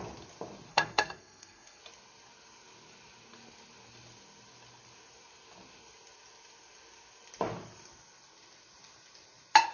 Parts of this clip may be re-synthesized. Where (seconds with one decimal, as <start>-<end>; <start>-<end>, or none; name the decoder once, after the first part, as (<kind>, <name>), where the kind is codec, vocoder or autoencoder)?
0.7-1.8 (codec, SNAC)